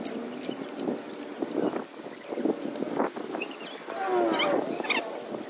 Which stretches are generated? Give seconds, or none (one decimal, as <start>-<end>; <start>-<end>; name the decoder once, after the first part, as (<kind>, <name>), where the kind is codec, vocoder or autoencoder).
none